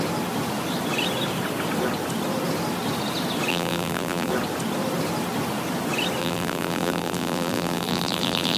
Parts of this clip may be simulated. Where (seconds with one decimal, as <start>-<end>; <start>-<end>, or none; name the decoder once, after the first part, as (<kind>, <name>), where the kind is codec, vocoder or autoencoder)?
3.5-4.3 (vocoder, BigVGAN v2); 6.2-8.6